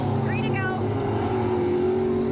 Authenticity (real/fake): real